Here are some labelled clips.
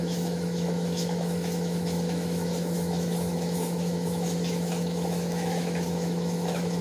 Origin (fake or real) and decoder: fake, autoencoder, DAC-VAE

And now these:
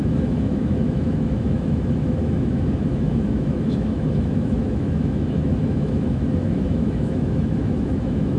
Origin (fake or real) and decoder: fake, autoencoder, DAC-VAE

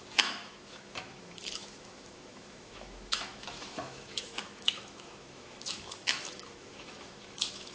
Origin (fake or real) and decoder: fake, autoencoder, DAC-VAE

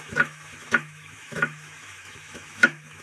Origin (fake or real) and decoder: fake, autoencoder, DAC-VAE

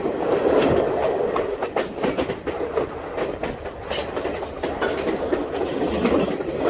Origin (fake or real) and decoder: real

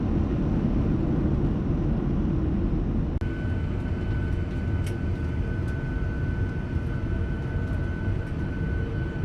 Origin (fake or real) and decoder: real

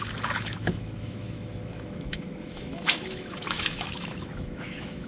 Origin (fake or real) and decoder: fake, autoencoder, DAC-VAE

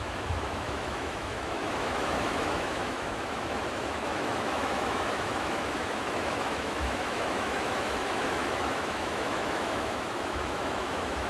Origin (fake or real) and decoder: fake, autoencoder, DAC-VAE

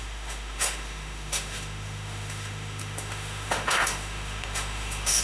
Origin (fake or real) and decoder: fake, autoencoder, DAC-VAE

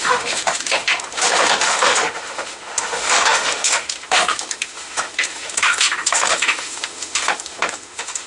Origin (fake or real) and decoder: fake, autoencoder, DAC-VAE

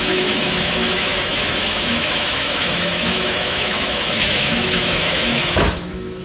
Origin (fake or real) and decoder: fake, autoencoder, DAC-VAE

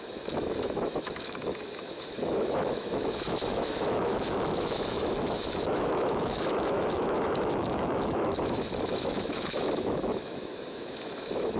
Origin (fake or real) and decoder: fake, autoencoder, DAC-VAE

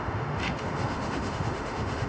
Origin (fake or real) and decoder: fake, autoencoder, DAC-VAE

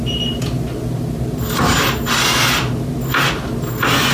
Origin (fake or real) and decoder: real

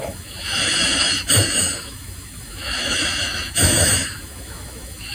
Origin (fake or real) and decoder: fake, autoencoder, DAC-VAE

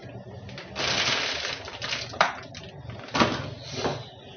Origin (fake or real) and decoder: real